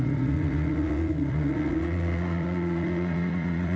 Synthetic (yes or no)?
yes